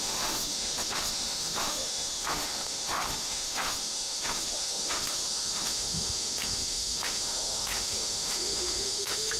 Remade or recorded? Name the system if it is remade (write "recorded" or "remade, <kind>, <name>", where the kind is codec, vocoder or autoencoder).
remade, autoencoder, DAC-VAE